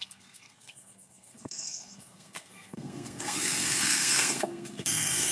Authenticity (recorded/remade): remade